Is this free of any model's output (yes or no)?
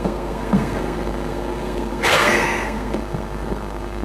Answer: no